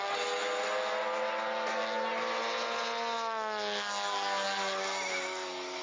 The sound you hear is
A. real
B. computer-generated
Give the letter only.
A